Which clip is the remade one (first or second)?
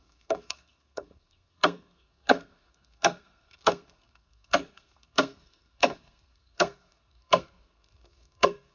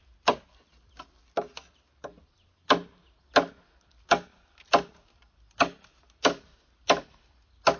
first